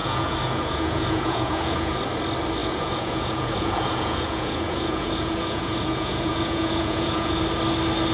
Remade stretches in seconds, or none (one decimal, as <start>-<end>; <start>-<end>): 0.0-2.0; 2.6-7.4